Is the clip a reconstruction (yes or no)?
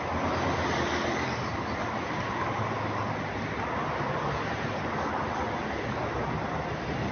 no